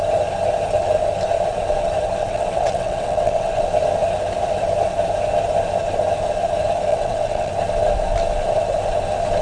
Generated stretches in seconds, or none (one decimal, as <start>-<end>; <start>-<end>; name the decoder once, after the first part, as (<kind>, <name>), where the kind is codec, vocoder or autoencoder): 2.2-3.6 (vocoder, WaveNeXt); 6.9-7.5